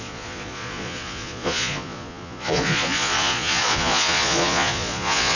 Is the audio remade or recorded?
remade